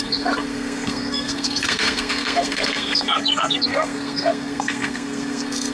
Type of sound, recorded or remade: remade